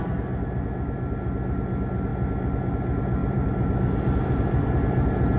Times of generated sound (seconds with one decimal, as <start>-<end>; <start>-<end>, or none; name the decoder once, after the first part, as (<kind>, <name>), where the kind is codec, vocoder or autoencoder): 3.2-4.7 (vocoder, BigVGAN v2)